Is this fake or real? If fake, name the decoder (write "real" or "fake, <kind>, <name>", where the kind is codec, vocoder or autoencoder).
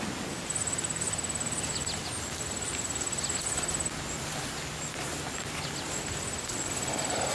real